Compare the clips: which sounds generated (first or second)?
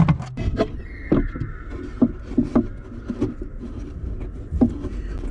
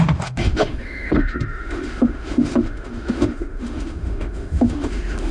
second